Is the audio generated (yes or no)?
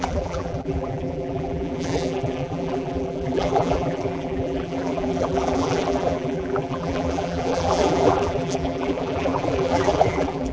yes